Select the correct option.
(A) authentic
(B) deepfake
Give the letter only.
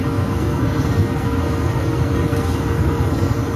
B